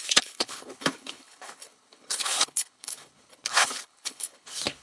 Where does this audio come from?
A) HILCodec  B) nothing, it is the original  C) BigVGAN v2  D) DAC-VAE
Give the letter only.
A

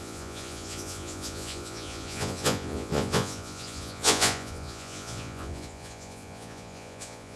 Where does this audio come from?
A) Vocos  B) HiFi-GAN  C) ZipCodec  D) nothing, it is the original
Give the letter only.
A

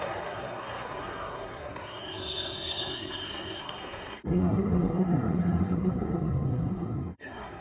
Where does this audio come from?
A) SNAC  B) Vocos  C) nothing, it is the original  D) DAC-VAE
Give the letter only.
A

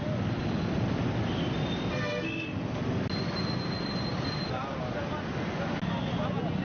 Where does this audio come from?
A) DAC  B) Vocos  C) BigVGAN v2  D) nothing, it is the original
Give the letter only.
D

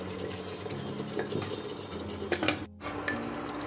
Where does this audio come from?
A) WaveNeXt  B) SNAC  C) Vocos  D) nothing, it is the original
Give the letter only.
D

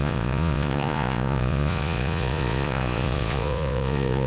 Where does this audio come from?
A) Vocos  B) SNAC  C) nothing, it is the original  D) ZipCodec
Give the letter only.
A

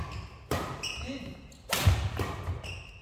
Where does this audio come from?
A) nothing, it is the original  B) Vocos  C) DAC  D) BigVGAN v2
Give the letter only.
A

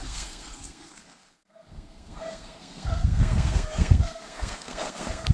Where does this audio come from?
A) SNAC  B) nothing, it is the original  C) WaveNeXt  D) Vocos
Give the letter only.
A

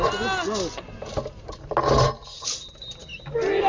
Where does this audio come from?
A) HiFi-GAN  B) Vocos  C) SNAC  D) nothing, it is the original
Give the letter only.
D